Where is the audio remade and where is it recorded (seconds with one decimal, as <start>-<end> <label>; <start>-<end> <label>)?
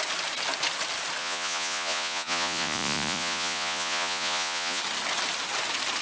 0.0-1.2 recorded; 1.2-4.8 remade; 4.8-6.0 recorded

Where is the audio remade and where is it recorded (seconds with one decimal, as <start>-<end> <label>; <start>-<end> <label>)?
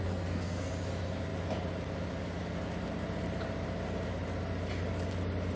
0.0-0.7 remade; 0.7-5.6 recorded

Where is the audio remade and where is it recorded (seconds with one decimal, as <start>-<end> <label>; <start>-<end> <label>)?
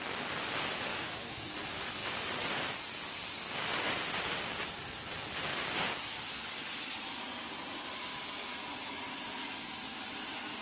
0.0-0.9 recorded; 0.9-1.4 remade; 1.4-10.6 recorded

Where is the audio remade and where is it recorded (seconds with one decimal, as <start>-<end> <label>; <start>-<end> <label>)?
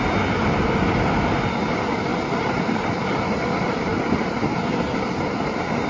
0.0-5.9 recorded